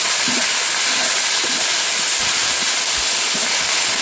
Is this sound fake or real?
real